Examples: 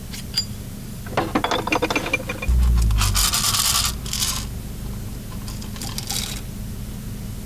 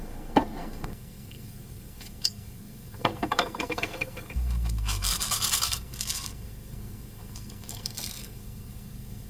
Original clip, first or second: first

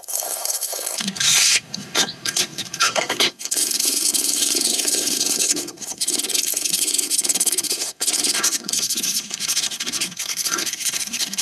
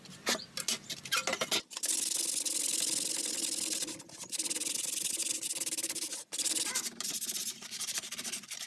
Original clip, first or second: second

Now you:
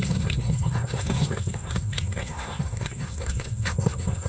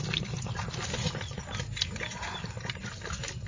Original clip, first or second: second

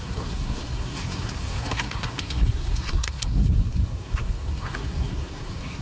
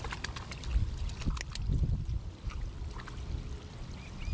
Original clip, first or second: second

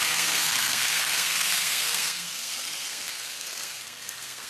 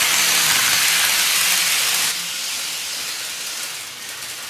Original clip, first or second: second